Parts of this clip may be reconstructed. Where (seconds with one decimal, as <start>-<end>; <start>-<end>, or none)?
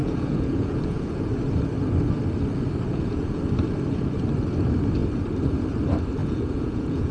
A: 0.0-1.3; 2.9-3.4; 6.2-7.1